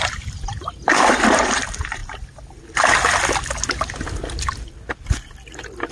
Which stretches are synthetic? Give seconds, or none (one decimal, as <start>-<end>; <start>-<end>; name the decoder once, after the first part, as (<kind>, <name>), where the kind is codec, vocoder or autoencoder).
none